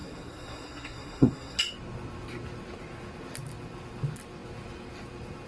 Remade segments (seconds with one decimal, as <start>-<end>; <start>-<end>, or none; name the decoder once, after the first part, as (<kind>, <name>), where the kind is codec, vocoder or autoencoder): 0.0-1.6 (codec, SNAC)